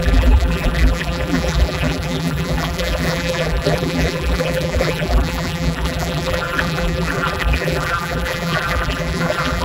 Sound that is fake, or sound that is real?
fake